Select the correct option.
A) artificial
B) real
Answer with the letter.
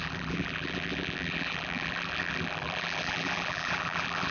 A